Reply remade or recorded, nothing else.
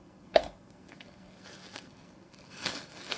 remade